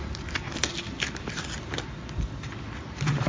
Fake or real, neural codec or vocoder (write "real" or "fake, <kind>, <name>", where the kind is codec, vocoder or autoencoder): real